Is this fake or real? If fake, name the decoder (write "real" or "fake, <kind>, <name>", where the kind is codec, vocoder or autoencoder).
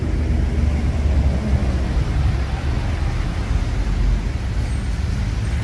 real